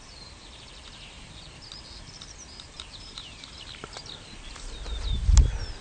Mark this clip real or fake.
real